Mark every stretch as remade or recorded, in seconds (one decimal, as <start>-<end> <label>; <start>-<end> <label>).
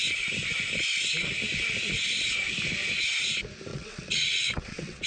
0.0-3.7 recorded; 3.7-5.1 remade